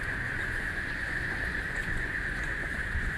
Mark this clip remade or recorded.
remade